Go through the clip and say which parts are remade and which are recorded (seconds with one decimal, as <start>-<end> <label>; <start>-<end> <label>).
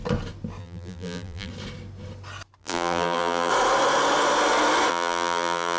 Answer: 0.0-0.6 recorded; 0.6-1.5 remade; 1.5-2.6 recorded; 2.6-3.5 remade; 3.5-4.9 recorded; 4.9-5.8 remade